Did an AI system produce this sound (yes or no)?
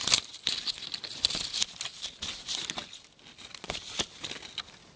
no